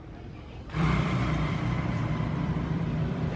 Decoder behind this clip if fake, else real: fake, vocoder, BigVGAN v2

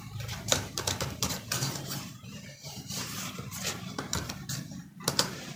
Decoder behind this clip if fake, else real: fake, vocoder, BigVGAN v2